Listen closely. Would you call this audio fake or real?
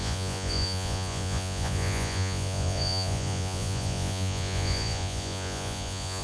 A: fake